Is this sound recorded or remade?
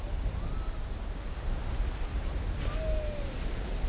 recorded